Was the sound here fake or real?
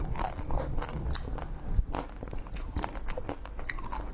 real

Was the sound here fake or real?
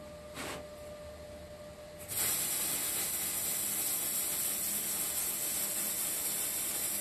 real